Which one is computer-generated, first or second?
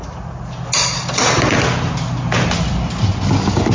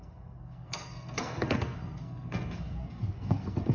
second